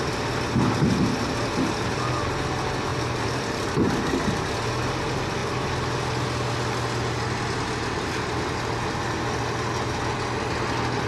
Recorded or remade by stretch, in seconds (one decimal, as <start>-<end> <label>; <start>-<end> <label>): 0.0-1.4 recorded; 1.4-2.1 remade; 2.1-2.9 recorded; 2.9-4.1 remade; 4.1-11.1 recorded